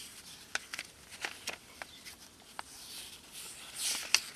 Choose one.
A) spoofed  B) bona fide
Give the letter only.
B